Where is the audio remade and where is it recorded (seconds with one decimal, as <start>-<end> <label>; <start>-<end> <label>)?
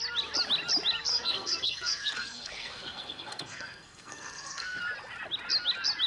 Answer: 0.0-1.1 recorded; 1.1-4.8 remade; 4.8-6.1 recorded